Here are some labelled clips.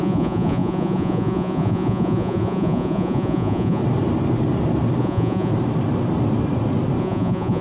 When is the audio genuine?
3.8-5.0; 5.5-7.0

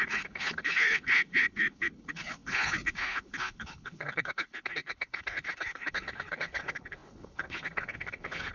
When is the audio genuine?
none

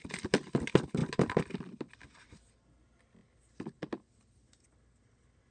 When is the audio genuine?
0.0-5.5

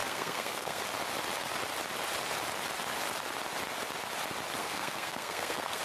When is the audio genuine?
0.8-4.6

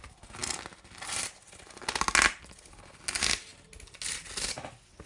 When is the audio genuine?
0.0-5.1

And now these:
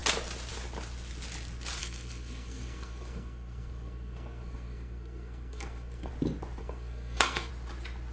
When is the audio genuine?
0.0-1.8; 6.1-6.6; 7.5-8.1

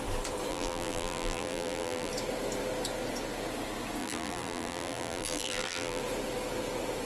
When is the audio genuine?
0.0-0.5; 2.1-4.0; 6.0-7.1

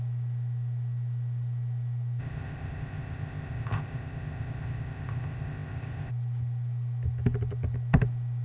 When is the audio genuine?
0.0-2.2; 6.1-8.4